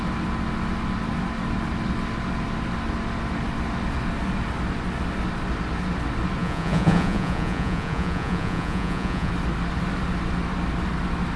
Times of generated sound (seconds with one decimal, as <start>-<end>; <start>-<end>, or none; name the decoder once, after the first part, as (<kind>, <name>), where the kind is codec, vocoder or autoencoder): 6.4-9.3 (vocoder, Vocos)